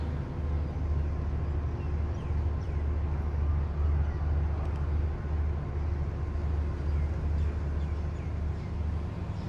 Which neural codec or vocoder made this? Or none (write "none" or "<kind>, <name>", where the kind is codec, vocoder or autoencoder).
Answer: none